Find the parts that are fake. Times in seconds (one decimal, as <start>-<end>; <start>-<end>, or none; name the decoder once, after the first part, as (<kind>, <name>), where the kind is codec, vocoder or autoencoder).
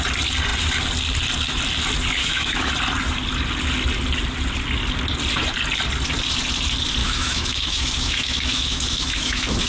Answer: 2.2-2.7 (autoencoder, DAC-VAE); 7.0-9.7